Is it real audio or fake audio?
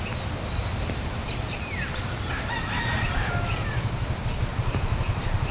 real